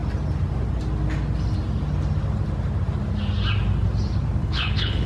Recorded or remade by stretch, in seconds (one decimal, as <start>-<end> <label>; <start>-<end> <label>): 0.0-4.4 recorded; 4.4-5.1 remade

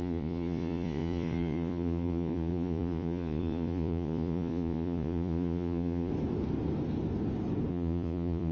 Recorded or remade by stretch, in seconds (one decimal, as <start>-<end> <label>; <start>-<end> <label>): 0.0-6.1 remade; 6.1-7.7 recorded; 7.7-8.5 remade

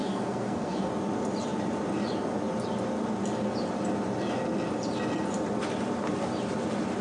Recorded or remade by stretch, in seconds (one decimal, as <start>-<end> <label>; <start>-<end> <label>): 0.0-0.9 remade; 0.9-7.0 recorded

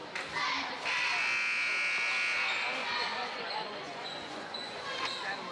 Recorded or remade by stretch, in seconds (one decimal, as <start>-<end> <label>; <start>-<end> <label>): 0.0-2.8 recorded; 2.8-5.1 remade; 5.1-5.5 recorded

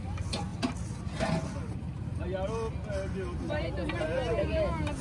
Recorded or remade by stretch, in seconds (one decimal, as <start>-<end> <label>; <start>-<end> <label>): 0.0-5.0 recorded

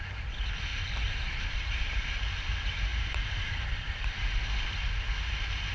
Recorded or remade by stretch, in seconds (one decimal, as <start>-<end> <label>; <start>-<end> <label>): 0.0-0.7 recorded; 0.7-1.4 remade; 1.4-2.9 recorded; 2.9-3.7 remade; 3.7-5.7 recorded

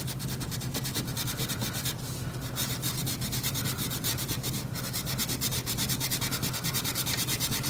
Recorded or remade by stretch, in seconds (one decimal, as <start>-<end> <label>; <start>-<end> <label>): 0.0-7.7 recorded

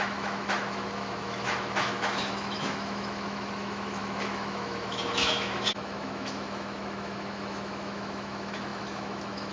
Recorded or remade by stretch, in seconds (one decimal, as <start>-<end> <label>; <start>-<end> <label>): 0.0-9.5 remade